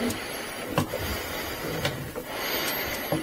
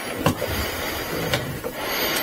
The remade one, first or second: second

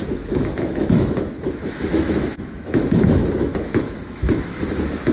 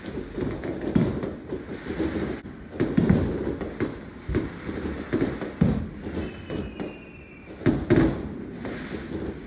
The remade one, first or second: first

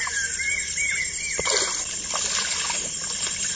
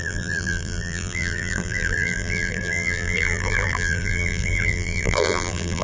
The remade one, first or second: second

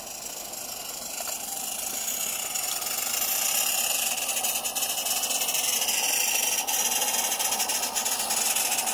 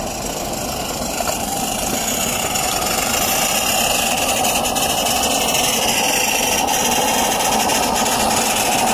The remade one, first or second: second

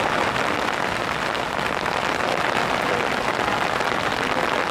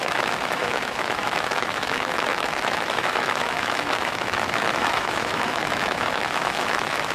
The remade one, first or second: second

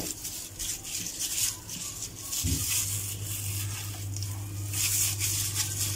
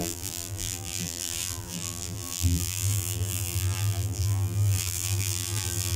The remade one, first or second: second